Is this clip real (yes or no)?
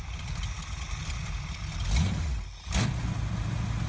yes